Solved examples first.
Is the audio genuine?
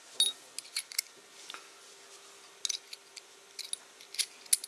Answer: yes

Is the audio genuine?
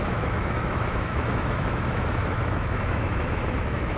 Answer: no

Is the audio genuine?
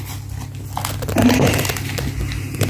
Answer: yes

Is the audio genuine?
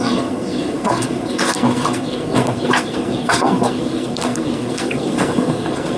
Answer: no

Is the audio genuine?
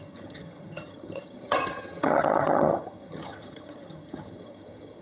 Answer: no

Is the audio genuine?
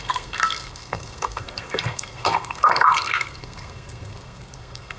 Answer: no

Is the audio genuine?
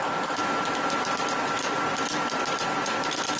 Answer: yes